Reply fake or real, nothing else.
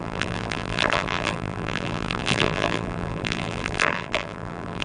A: fake